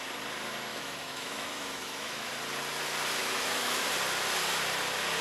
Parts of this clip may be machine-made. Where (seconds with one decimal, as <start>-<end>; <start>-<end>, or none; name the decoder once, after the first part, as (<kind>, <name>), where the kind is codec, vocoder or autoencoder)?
0.7-2.3 (autoencoder, DAC-VAE); 3.2-3.9